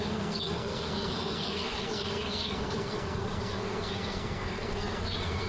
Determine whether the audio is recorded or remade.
remade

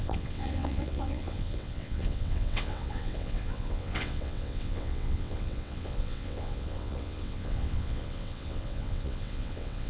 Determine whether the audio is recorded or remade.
remade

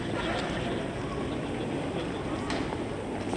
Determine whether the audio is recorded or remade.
recorded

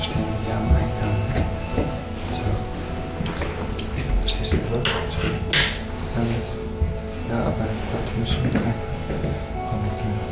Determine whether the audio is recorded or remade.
recorded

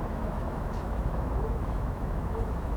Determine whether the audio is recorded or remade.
remade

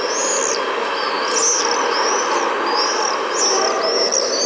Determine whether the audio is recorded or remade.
recorded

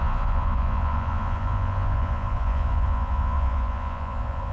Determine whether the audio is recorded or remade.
remade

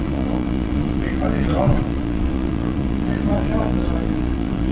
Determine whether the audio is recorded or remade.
remade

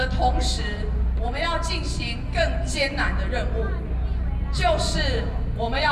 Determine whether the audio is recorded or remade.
recorded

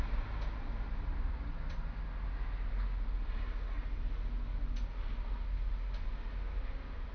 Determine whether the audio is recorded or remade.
recorded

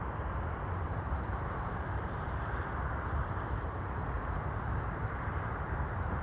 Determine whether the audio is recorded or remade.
remade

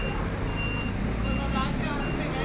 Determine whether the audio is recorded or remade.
recorded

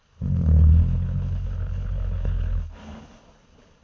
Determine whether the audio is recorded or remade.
remade